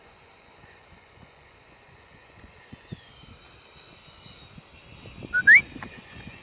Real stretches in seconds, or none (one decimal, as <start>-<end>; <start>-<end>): 3.1-5.8